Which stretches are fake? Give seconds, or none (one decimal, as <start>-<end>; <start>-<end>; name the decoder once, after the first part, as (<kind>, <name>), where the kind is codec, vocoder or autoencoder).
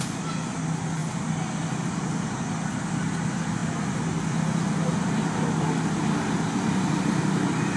none